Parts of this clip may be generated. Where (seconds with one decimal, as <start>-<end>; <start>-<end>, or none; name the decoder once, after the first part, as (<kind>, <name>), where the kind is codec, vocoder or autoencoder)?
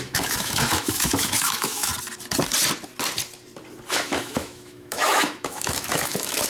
0.0-1.9 (autoencoder, DAC-VAE); 3.9-6.5